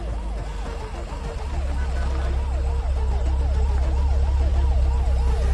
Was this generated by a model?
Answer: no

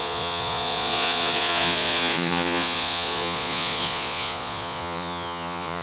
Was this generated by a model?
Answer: yes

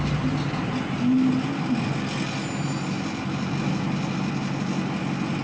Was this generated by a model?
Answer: no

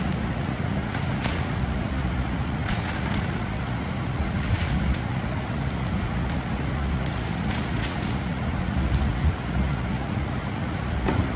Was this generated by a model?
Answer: yes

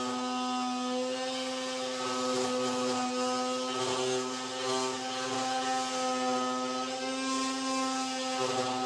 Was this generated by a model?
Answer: no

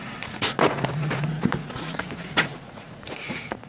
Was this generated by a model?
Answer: yes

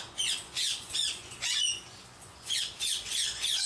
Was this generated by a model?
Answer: yes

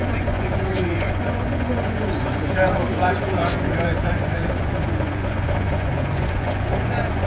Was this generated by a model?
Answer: yes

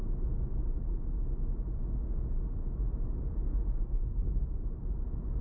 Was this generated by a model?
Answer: no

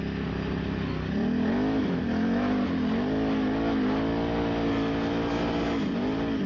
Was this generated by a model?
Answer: no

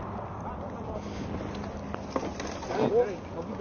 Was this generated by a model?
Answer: no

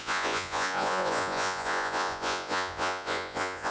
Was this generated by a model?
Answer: yes